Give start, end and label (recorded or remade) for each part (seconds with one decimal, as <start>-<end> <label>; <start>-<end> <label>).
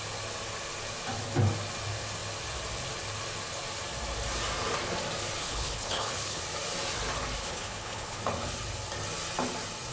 0.0-5.4 recorded; 5.4-6.4 remade; 6.4-7.4 recorded; 7.4-8.2 remade; 8.2-9.9 recorded